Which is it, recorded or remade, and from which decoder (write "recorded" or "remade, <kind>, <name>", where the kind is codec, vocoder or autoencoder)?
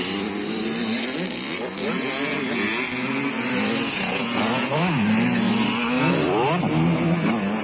recorded